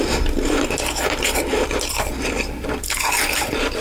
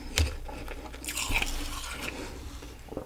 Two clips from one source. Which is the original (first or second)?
second